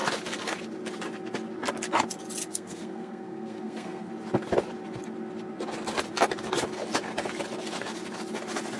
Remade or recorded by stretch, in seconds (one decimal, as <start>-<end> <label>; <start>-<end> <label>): 0.0-2.4 recorded; 2.4-4.1 remade; 4.1-8.8 recorded